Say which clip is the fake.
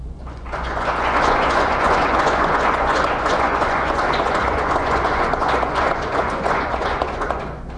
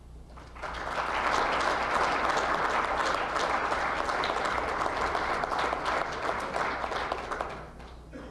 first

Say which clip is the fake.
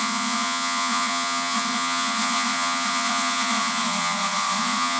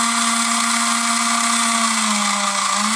first